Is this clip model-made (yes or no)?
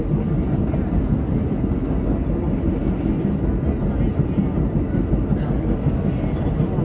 no